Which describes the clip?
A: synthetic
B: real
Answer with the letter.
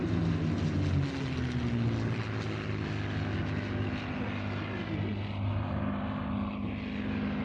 B